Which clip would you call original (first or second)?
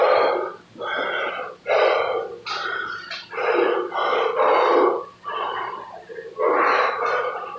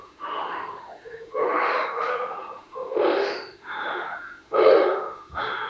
first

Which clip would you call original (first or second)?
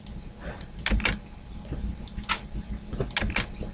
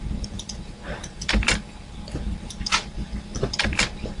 first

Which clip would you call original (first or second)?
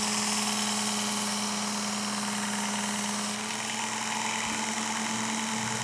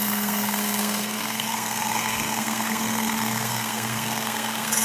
first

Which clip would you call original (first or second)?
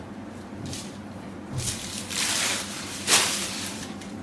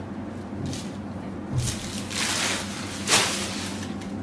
second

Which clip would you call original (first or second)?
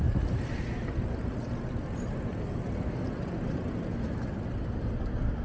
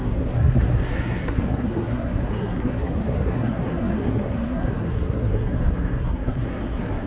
first